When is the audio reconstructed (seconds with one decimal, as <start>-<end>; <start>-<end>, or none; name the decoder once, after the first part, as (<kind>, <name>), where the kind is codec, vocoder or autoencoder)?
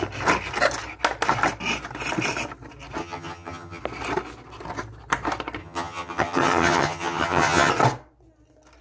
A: 3.0-3.8 (vocoder, HiFi-GAN); 5.6-7.7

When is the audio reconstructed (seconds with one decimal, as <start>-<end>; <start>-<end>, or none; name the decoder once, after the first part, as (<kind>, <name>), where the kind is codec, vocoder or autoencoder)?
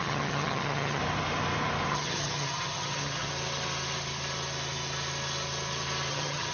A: 0.0-1.0 (vocoder, HiFi-GAN); 1.9-3.3; 6.1-6.5